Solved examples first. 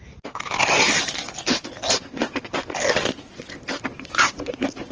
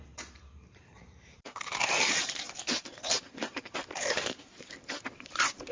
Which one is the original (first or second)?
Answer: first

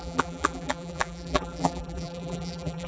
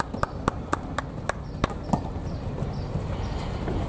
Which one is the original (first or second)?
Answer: second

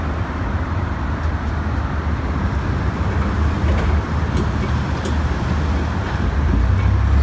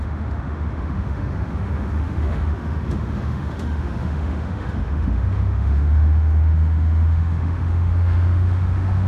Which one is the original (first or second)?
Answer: first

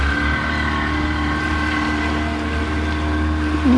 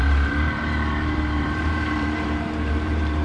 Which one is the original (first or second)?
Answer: first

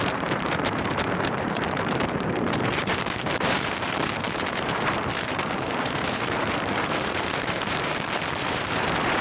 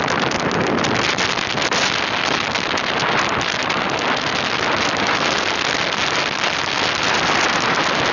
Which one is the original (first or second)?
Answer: second